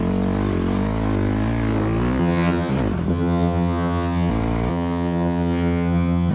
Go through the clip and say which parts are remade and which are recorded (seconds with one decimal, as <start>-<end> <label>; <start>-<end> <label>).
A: 0.0-2.2 recorded; 2.2-2.7 remade; 2.7-3.1 recorded; 3.1-4.3 remade; 4.3-4.7 recorded; 4.7-6.3 remade